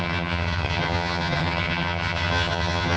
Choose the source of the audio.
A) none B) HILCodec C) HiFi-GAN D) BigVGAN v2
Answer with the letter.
C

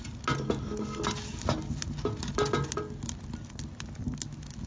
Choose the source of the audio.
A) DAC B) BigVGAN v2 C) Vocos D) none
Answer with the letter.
D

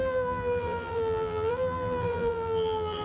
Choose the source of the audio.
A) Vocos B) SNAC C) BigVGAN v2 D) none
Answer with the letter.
C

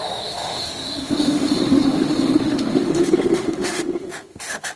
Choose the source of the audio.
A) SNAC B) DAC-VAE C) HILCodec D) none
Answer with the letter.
B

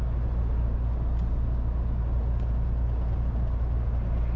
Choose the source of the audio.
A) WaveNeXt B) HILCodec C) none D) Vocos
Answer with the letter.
C